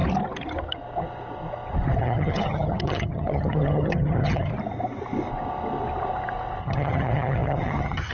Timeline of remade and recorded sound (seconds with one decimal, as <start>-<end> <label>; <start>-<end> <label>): 0.0-2.0 recorded; 2.0-4.5 remade; 4.5-6.6 recorded; 6.6-8.1 remade